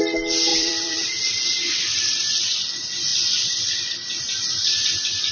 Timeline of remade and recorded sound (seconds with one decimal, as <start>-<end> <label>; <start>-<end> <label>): 0.0-0.5 recorded; 0.5-1.4 remade; 1.4-3.1 recorded; 3.1-5.3 remade